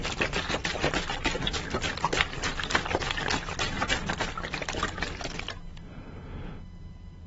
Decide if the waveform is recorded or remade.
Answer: recorded